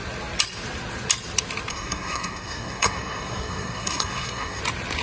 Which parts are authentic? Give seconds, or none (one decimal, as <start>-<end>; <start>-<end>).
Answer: 0.0-1.7; 4.6-5.0